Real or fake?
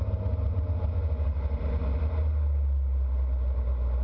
real